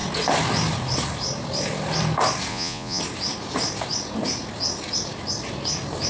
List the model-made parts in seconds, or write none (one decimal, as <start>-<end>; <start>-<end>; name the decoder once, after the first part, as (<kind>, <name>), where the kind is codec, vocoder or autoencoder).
2.5-3.0 (vocoder, Vocos)